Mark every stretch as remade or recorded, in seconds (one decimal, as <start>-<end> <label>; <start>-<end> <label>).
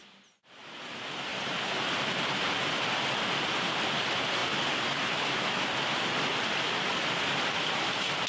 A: 0.0-8.3 recorded